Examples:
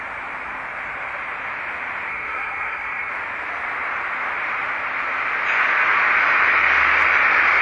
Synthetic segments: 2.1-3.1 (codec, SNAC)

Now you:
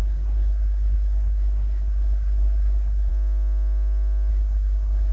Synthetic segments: 0.0-3.1 (codec, SNAC); 4.3-5.1

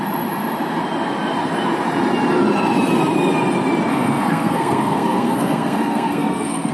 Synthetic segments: 3.9-6.7 (codec, SNAC)

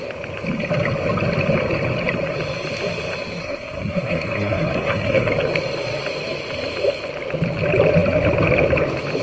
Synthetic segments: 3.4-5.3 (codec, SNAC)